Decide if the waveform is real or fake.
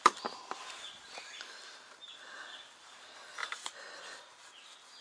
real